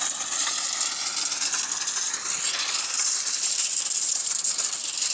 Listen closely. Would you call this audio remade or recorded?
recorded